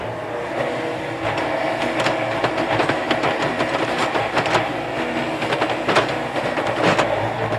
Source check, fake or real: real